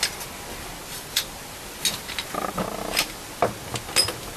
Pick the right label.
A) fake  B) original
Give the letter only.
B